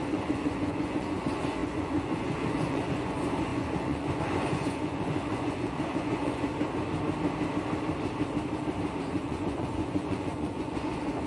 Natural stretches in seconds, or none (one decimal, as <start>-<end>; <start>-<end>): 6.5-9.0